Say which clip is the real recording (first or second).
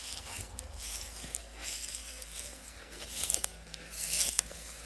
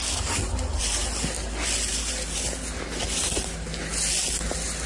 second